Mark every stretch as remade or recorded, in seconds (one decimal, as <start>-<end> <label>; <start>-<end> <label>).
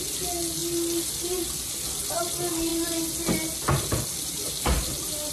0.0-5.3 recorded